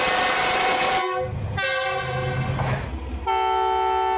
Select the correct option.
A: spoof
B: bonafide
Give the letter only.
B